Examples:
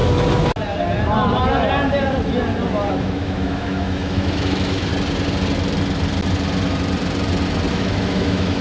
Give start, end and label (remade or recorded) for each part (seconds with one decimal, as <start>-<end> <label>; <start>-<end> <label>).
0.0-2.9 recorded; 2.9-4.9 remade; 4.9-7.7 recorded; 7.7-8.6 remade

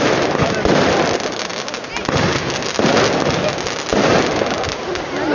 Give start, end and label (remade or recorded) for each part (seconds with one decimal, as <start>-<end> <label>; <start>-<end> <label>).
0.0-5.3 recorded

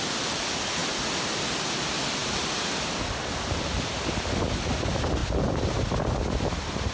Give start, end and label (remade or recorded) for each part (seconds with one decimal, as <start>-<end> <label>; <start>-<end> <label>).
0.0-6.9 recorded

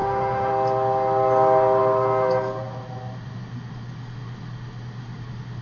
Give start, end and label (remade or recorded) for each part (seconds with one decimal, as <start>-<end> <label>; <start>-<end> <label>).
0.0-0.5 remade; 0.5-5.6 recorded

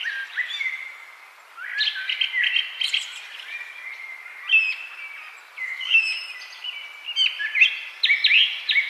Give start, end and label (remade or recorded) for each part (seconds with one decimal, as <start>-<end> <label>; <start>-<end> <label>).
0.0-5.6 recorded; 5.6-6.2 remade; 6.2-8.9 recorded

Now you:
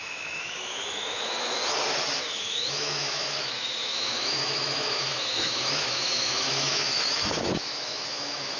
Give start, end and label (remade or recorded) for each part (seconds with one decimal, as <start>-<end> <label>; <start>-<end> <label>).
0.0-1.6 remade; 1.6-2.2 recorded; 2.2-8.6 remade

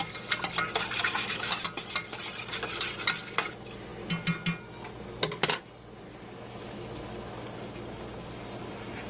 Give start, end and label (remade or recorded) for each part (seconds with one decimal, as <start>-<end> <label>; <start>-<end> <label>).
0.0-1.1 recorded; 1.1-1.6 remade; 1.6-9.1 recorded

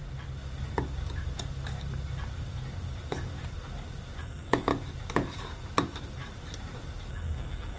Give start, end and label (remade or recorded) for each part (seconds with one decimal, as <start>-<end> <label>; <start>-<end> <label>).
0.0-4.2 recorded; 4.2-4.7 remade; 4.7-7.1 recorded; 7.1-7.8 remade